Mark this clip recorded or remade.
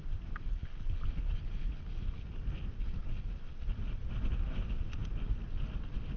recorded